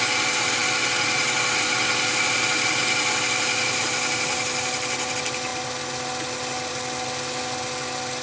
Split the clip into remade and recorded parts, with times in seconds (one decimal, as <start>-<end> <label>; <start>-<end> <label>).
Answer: 0.0-8.2 recorded